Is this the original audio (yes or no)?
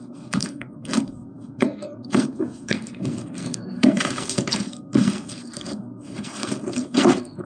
no